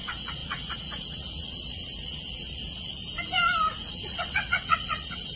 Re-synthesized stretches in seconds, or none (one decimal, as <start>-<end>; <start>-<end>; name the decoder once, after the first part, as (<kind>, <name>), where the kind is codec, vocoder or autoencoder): 0.0-3.0 (vocoder, Vocos); 3.9-5.4